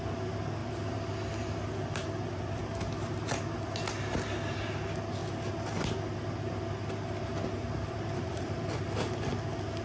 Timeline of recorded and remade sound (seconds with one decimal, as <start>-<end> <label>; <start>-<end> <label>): 0.0-0.6 recorded; 0.6-2.6 remade; 2.6-7.6 recorded; 7.6-8.8 remade; 8.8-9.8 recorded